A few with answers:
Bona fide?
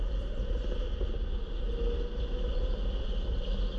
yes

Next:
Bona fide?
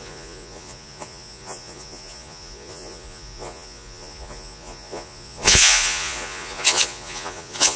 no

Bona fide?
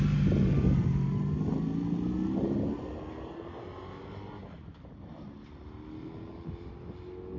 yes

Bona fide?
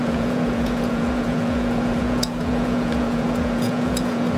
no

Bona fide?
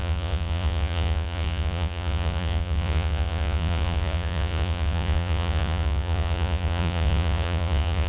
no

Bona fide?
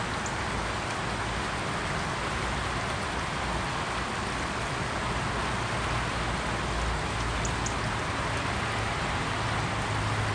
yes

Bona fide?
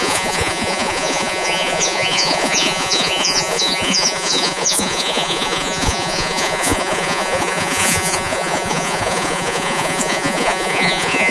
no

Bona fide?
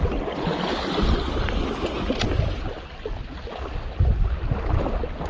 yes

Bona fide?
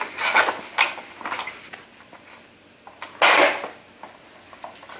yes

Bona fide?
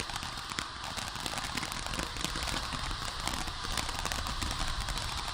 yes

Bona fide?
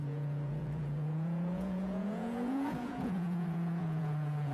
no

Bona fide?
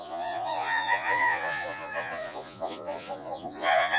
no